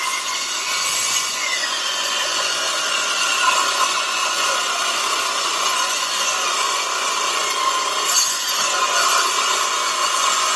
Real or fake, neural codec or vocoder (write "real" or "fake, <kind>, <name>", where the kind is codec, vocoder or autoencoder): fake, vocoder, Vocos